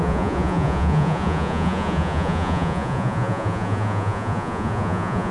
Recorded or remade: remade